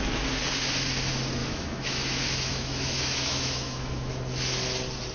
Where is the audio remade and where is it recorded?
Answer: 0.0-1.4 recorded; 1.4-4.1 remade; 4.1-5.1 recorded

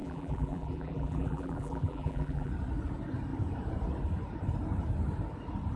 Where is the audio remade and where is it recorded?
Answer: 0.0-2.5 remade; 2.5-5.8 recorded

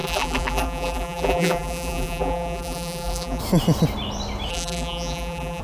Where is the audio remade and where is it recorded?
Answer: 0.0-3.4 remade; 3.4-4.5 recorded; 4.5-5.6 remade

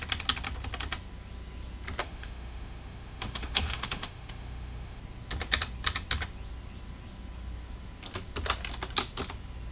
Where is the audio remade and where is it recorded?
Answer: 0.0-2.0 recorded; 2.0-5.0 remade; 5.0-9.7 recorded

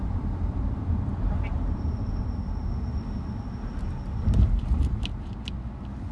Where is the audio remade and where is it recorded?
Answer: 0.0-2.2 remade; 2.2-6.1 recorded

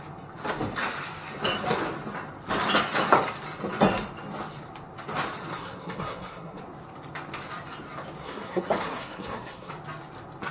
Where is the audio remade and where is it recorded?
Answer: 0.0-5.5 recorded; 5.5-6.6 remade; 6.6-8.2 recorded; 8.2-9.7 remade; 9.7-10.5 recorded